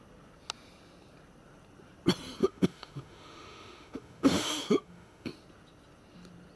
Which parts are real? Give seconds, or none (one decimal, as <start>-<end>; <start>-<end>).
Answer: 0.0-2.4; 5.3-6.6